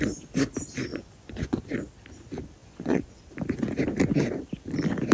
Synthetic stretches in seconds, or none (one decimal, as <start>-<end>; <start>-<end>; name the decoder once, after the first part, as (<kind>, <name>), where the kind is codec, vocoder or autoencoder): 0.9-1.6 (vocoder, Vocos); 2.6-3.2